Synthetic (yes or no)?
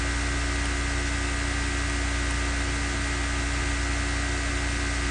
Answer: no